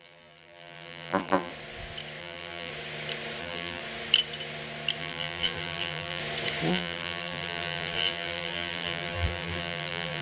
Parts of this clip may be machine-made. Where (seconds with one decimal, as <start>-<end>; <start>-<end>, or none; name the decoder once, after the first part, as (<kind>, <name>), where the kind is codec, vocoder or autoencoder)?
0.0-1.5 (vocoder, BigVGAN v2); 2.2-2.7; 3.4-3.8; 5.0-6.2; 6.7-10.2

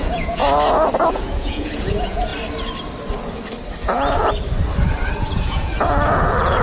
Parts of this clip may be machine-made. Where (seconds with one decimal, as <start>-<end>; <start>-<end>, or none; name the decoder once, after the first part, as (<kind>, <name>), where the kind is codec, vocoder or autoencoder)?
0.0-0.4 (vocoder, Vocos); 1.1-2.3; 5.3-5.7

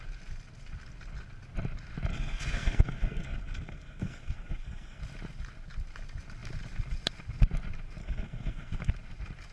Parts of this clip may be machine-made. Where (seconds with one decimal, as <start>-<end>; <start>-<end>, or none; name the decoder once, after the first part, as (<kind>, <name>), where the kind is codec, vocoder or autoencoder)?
2.1-5.0 (codec, SNAC); 8.0-8.9

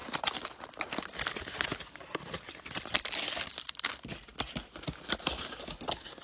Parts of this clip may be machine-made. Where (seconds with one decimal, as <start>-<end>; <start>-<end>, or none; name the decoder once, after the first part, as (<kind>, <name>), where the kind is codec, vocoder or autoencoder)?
none

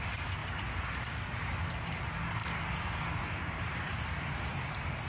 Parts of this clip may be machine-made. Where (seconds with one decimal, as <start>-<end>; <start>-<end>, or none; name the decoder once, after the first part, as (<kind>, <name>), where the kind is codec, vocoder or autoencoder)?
none